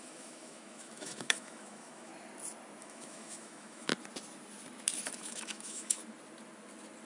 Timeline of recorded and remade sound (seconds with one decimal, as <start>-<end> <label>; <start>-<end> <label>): 0.0-2.1 remade; 2.1-2.8 recorded; 2.8-3.9 remade; 3.9-5.2 recorded; 5.2-6.0 remade; 6.0-7.1 recorded